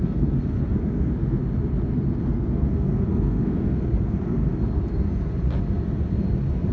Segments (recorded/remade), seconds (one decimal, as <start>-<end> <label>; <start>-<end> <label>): 0.0-1.4 remade; 1.4-2.2 recorded; 2.2-4.4 remade; 4.4-6.7 recorded